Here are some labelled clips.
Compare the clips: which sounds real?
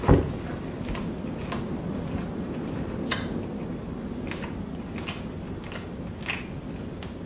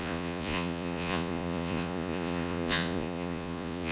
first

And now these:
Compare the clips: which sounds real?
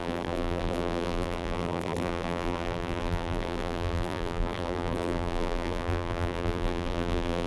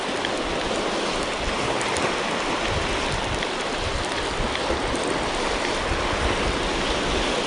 second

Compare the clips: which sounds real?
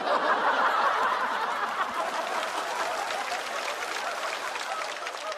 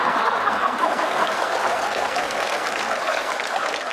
first